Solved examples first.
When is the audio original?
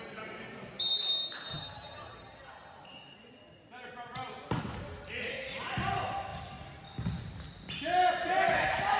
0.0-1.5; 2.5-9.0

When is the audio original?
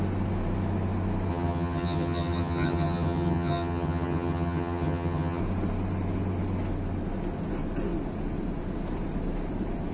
0.0-1.3; 5.4-9.9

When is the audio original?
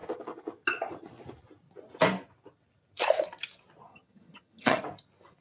0.0-3.9; 4.8-5.4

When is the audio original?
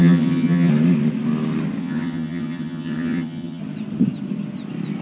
0.7-1.8; 3.6-5.0